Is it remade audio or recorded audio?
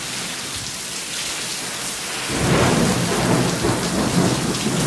recorded